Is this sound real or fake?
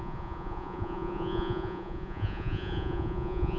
fake